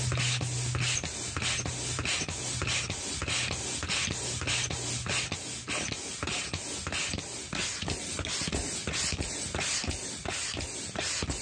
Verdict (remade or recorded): recorded